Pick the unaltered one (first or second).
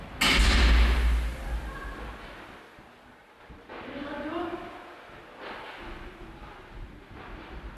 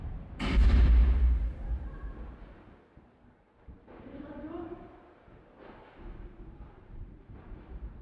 first